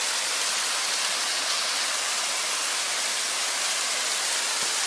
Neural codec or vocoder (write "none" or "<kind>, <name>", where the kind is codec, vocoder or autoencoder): none